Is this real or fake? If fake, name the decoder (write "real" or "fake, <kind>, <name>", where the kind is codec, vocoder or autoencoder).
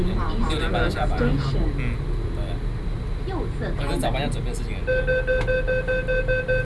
real